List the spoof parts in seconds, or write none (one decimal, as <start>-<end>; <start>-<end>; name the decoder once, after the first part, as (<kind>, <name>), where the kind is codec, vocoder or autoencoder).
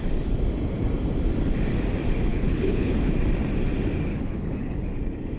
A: 2.3-2.9 (codec, HILCodec); 4.1-4.9